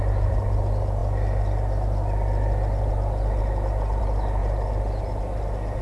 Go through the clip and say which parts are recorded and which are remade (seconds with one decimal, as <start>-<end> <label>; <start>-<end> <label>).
0.0-5.8 recorded